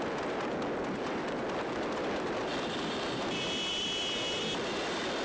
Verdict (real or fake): real